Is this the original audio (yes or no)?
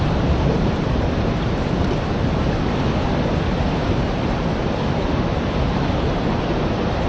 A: no